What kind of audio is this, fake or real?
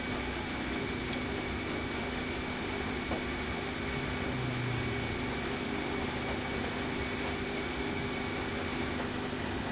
real